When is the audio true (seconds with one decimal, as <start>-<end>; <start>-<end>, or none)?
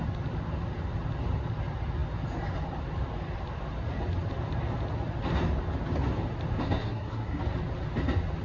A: 0.0-6.8; 7.4-8.4